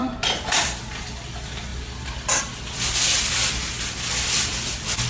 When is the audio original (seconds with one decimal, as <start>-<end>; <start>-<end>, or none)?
0.8-5.1